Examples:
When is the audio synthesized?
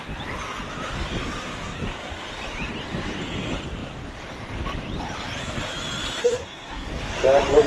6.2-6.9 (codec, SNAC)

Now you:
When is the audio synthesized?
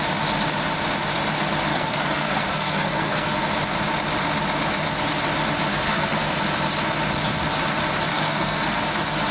1.7-3.4 (codec, SNAC); 5.7-6.4; 8.1-8.8